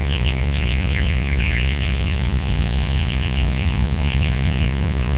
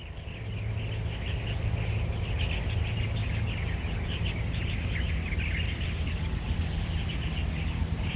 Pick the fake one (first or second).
first